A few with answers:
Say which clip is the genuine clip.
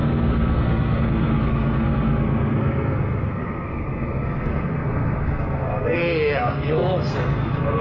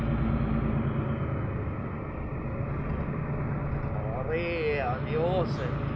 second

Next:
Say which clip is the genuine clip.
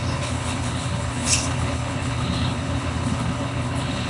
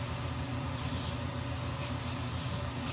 second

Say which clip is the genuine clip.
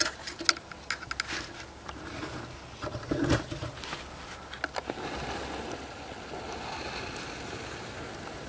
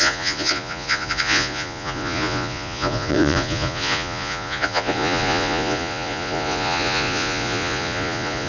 first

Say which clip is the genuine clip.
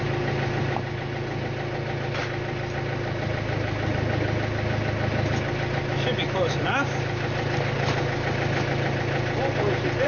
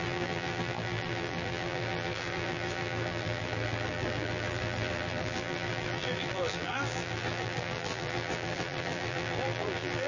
first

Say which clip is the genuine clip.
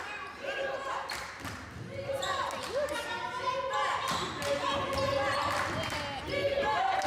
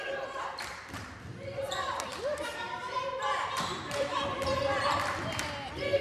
first